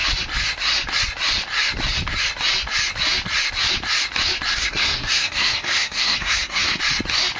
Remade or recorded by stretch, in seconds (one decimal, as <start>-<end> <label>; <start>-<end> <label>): 0.0-4.5 recorded; 4.5-6.8 remade; 6.8-7.4 recorded